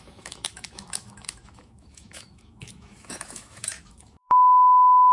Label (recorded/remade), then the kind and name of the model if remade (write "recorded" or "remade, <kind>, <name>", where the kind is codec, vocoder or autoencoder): remade, autoencoder, DAC-VAE